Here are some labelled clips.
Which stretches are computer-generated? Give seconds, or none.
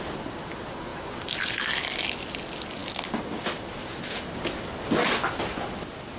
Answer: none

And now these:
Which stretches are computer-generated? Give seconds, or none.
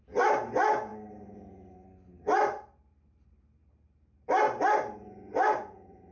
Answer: none